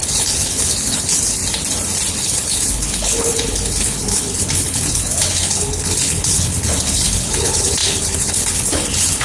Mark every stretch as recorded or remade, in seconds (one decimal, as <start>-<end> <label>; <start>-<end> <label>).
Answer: 0.0-1.4 remade; 1.4-2.1 recorded; 2.1-9.2 remade